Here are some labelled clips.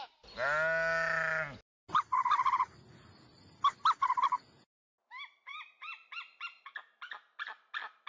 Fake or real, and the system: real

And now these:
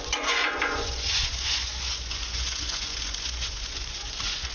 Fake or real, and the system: fake, vocoder, Vocos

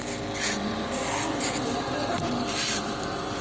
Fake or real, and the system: fake, vocoder, BigVGAN v2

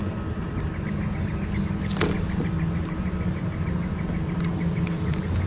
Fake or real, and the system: real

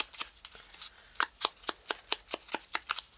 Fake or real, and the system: real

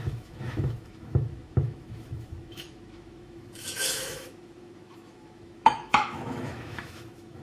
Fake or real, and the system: fake, autoencoder, DAC-VAE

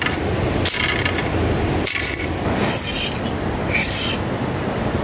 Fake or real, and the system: real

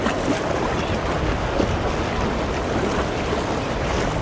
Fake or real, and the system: real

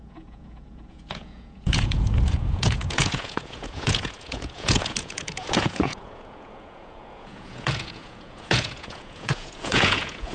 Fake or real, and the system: fake, vocoder, Vocos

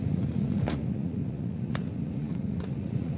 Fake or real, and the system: fake, vocoder, Vocos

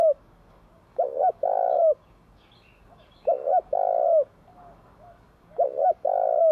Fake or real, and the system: fake, codec, DAC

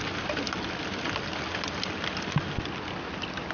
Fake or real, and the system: real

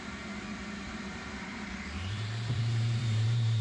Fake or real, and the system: fake, vocoder, BigVGAN v2